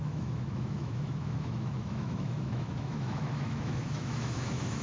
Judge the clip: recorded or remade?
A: remade